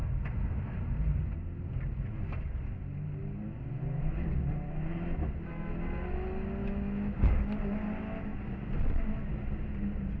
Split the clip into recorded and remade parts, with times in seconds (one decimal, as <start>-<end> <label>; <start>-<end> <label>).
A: 0.0-6.6 recorded; 6.6-7.2 remade; 7.2-10.2 recorded